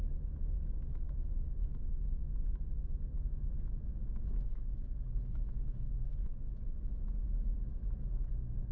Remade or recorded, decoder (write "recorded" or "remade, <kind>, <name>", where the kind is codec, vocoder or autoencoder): remade, autoencoder, DAC-VAE